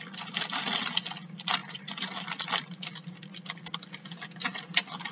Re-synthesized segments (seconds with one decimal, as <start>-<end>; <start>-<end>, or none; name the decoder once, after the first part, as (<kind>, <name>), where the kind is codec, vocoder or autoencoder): none